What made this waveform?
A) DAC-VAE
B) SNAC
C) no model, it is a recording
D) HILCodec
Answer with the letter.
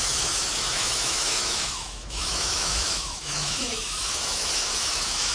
A